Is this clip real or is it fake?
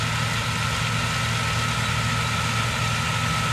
real